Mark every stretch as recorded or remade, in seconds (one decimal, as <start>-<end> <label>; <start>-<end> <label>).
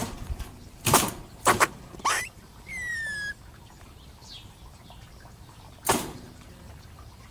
0.0-2.5 remade; 2.5-2.9 recorded; 2.9-7.3 remade